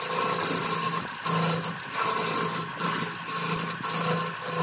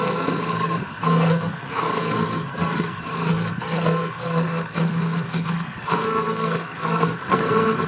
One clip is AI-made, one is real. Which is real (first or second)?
first